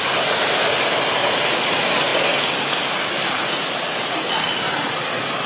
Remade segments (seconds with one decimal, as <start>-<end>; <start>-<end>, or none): 1.2-1.7